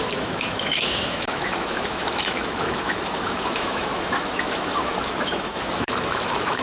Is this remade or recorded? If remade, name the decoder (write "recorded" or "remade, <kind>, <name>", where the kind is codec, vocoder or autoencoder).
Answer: remade, autoencoder, DAC-VAE